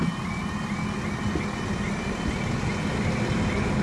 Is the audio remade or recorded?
recorded